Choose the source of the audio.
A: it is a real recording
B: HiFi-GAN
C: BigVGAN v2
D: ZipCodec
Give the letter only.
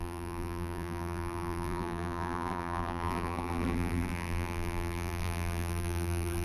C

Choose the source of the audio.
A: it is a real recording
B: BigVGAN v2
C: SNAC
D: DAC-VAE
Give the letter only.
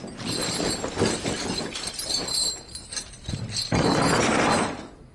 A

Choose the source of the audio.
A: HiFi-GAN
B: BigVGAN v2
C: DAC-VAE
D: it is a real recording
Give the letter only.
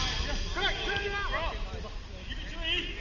D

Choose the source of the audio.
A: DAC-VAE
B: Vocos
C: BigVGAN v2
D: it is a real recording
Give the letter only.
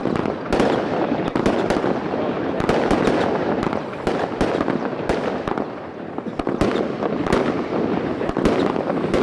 D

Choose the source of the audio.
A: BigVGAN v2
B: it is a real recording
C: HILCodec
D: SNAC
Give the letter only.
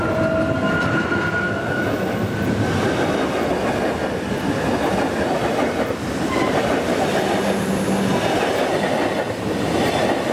B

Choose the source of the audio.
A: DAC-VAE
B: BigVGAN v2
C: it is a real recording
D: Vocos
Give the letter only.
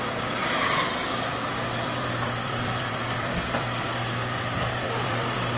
B